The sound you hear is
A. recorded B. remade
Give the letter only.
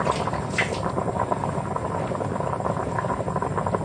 A